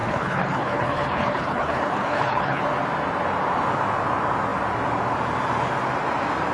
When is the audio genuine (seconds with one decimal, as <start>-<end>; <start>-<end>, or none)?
2.6-6.5